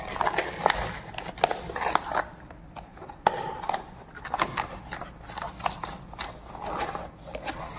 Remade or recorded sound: recorded